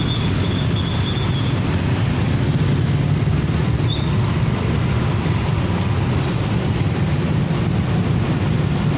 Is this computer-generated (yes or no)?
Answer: no